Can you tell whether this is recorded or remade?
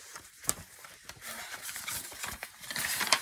remade